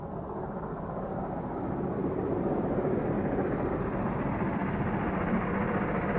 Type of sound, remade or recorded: recorded